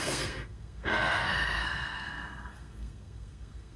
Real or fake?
fake